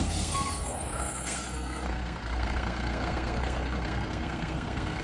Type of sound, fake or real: fake